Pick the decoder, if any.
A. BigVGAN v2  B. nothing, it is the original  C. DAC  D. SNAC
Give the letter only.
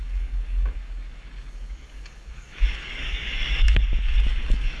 C